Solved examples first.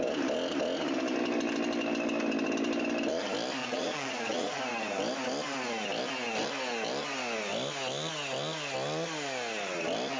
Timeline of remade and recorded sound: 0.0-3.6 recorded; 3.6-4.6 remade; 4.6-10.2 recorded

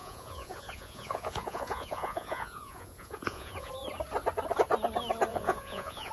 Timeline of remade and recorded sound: 0.0-3.7 remade; 3.7-5.3 recorded; 5.3-6.1 remade

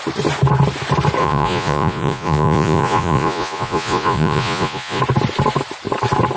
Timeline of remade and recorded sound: 0.0-1.2 recorded; 1.2-5.0 remade; 5.0-6.4 recorded

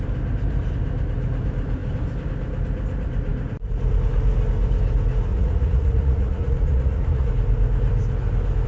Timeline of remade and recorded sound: 0.0-5.3 recorded; 5.3-7.3 remade; 7.3-8.7 recorded

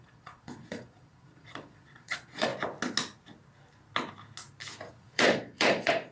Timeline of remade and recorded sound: 0.0-2.5 remade; 2.5-4.9 recorded; 4.9-6.1 remade

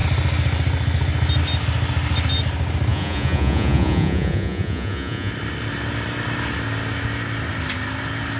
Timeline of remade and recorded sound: 0.0-2.9 recorded; 2.9-5.3 remade; 5.3-8.4 recorded

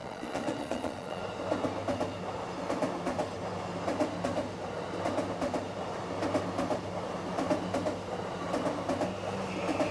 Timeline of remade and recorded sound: 0.0-1.2 remade; 1.2-9.9 recorded